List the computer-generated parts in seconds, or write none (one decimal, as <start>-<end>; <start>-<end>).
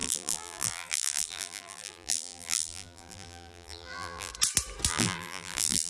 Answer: 0.0-4.3; 4.9-5.9